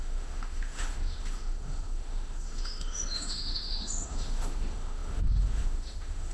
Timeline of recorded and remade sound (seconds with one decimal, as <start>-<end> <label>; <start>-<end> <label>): 0.0-6.3 remade